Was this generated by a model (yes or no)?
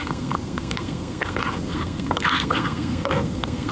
yes